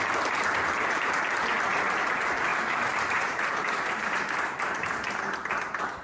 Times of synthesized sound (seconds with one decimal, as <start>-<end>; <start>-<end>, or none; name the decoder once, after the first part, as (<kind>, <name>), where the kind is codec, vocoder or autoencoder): 2.5-5.4 (vocoder, BigVGAN v2)